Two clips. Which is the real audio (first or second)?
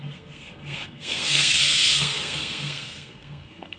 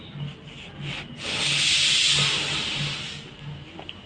second